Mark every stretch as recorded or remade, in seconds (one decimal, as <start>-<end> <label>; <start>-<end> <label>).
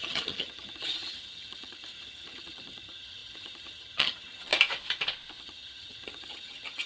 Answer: 0.0-4.5 remade; 4.5-5.4 recorded; 5.4-6.9 remade